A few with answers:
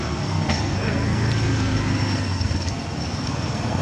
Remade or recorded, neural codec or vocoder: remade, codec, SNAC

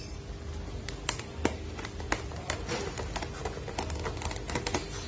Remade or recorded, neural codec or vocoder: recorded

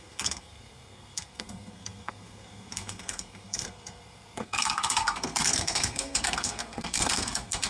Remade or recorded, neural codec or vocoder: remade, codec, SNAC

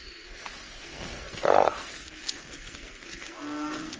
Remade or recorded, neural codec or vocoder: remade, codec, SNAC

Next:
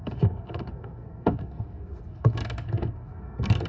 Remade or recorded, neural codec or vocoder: remade, codec, SNAC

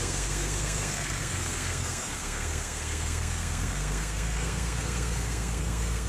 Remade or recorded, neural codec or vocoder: remade, codec, SNAC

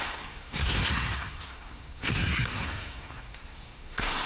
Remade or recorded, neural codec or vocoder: remade, codec, SNAC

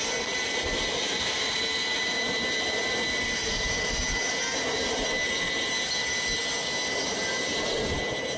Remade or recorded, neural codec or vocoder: recorded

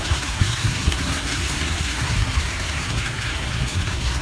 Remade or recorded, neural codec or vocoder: remade, codec, SNAC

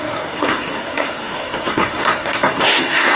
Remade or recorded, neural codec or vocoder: remade, codec, SNAC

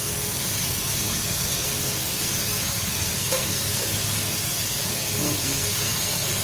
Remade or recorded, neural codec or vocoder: remade, codec, SNAC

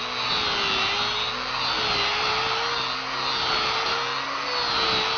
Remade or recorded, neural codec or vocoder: recorded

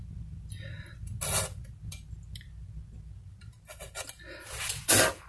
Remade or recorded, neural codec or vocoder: recorded